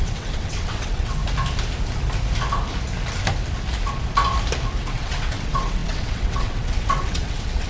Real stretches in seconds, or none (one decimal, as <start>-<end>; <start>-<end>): 1.2-4.8